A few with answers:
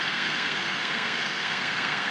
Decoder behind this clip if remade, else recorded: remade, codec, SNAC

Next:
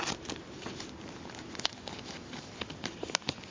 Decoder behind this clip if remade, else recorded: recorded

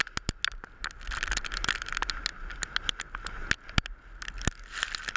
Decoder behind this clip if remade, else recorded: recorded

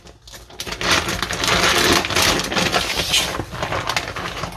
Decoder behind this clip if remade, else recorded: recorded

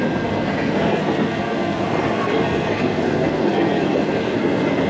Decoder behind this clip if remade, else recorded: remade, codec, SNAC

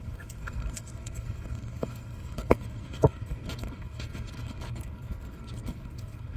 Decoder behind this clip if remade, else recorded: remade, codec, SNAC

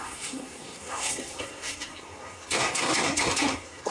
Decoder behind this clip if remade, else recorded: remade, codec, SNAC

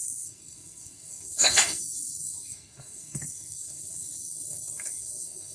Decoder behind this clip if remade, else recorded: remade, codec, SNAC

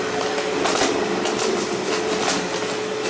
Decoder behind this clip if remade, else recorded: recorded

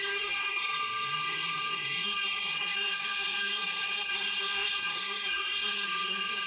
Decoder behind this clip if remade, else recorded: remade, codec, SNAC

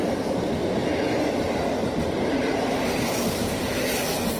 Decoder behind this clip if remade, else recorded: recorded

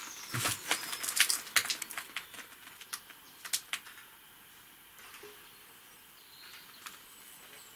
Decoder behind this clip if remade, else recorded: recorded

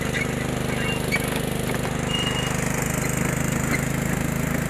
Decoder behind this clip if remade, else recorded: recorded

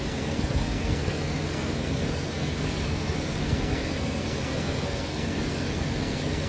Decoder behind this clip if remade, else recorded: remade, codec, SNAC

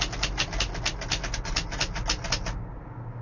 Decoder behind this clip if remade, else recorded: recorded